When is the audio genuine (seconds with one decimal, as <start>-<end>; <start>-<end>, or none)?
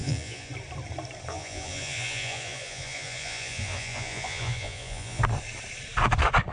0.5-1.3; 5.2-6.5